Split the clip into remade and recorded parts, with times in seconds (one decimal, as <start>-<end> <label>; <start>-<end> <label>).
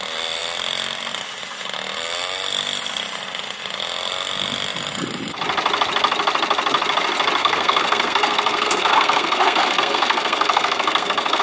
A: 0.0-7.4 recorded; 7.4-11.4 remade